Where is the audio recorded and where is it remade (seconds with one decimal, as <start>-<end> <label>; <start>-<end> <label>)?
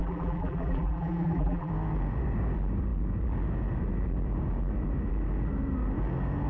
0.0-1.7 remade; 1.7-6.5 recorded